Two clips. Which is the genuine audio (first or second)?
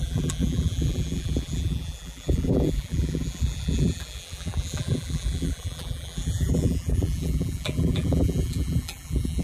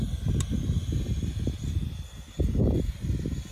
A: second